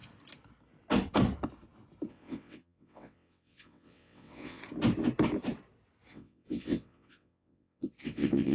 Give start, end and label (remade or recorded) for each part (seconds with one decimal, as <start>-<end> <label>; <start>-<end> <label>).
0.0-2.1 recorded; 2.1-4.6 remade; 4.6-6.1 recorded; 6.1-8.5 remade